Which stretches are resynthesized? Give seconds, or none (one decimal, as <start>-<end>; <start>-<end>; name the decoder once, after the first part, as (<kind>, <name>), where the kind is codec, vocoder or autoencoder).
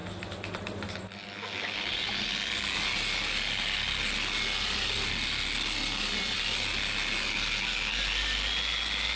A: none